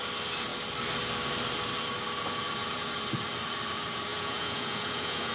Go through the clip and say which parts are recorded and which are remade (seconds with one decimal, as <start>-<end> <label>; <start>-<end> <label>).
0.0-4.1 recorded; 4.1-5.3 remade